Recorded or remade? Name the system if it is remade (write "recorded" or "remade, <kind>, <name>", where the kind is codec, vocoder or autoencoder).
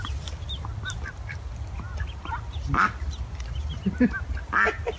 recorded